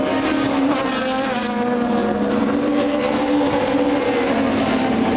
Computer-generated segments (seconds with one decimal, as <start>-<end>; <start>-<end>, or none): 2.0-5.2